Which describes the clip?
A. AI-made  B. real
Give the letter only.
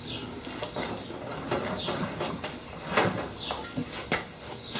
B